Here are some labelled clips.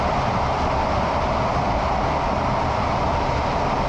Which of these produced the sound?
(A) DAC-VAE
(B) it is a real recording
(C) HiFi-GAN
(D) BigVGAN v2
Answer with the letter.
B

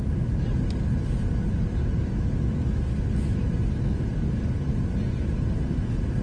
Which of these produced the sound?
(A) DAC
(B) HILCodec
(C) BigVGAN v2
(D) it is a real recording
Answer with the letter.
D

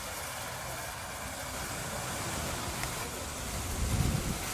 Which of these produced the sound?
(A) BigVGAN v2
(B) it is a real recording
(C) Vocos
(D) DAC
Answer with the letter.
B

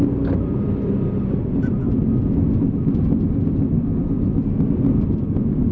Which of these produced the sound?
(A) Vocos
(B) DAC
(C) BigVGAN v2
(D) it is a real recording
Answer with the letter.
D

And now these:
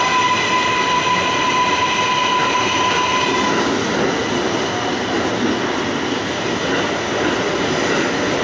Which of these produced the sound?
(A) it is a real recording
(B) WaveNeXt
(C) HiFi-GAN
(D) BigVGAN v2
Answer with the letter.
A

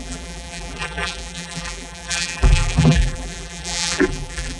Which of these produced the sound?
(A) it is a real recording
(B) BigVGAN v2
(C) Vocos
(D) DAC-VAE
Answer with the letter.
B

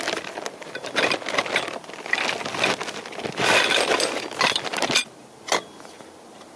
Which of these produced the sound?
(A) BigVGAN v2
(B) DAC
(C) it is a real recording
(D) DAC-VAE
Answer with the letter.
C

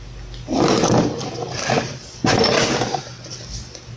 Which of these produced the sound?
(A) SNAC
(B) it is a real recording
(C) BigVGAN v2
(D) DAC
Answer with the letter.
B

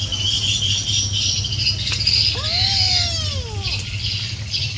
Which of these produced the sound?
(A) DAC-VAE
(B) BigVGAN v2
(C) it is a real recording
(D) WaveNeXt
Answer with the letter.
C